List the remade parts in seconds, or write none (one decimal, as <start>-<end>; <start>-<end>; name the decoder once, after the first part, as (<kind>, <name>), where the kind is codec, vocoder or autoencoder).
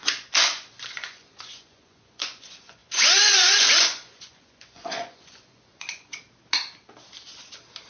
0.0-6.1 (vocoder, Vocos)